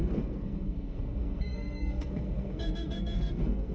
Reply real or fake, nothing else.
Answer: fake